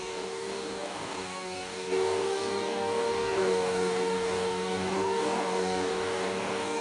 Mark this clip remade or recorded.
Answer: remade